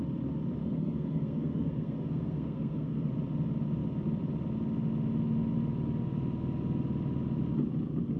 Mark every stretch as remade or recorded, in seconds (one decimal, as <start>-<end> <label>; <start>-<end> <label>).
0.0-0.6 recorded; 0.6-3.1 remade; 3.1-8.2 recorded